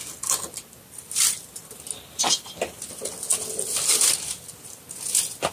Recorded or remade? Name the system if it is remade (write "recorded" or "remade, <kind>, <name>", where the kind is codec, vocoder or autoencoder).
recorded